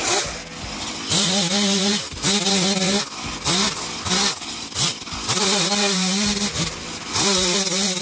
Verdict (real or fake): real